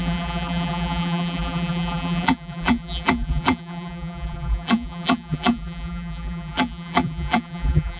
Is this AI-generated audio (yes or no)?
yes